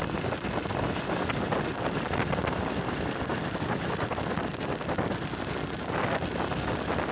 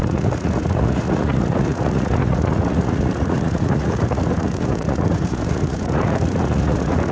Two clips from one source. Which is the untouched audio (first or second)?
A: first